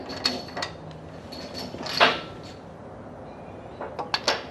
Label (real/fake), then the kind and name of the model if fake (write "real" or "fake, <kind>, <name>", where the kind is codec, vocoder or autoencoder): real